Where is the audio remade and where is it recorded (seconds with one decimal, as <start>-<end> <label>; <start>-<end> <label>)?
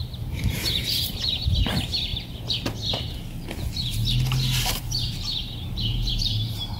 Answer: 0.0-2.1 remade; 2.1-4.7 recorded; 4.7-6.8 remade